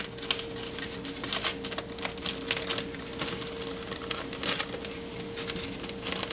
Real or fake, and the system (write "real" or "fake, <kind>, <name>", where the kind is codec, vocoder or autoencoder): real